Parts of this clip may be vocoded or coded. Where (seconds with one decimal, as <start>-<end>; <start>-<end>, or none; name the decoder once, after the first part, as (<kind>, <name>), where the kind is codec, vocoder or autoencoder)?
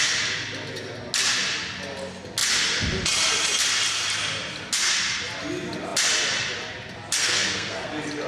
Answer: 7.2-7.9 (codec, SNAC)